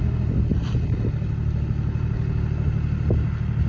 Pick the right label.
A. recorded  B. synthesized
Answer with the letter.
A